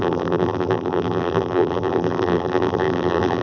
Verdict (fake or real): fake